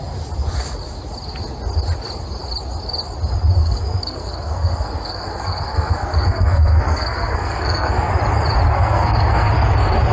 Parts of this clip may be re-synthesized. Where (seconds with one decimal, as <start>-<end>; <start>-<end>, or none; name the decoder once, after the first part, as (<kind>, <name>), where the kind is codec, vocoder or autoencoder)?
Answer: 3.6-8.1 (codec, SNAC); 8.7-9.5

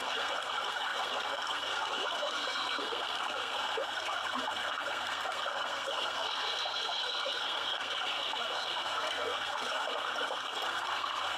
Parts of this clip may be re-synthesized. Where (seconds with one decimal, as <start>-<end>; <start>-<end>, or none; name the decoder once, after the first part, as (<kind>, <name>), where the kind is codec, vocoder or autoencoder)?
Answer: 0.0-11.4 (codec, SNAC)